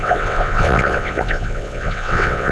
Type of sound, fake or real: fake